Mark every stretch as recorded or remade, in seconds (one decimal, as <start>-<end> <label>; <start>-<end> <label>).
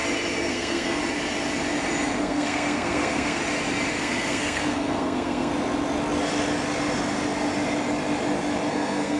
0.0-0.5 recorded; 0.5-1.0 remade; 1.0-2.2 recorded; 2.2-3.4 remade; 3.4-3.9 recorded; 3.9-5.5 remade; 5.5-8.7 recorded; 8.7-9.2 remade